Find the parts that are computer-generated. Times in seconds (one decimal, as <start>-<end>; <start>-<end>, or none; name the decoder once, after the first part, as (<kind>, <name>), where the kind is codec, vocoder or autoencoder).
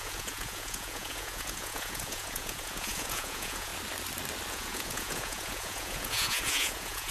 0.0-3.7 (vocoder, Vocos); 4.5-7.1